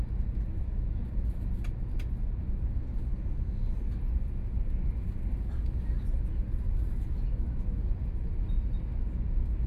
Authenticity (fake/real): real